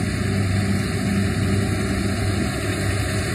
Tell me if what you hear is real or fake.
real